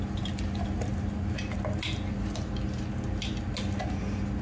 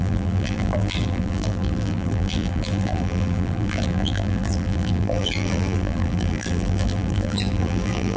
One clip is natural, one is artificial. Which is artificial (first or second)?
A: second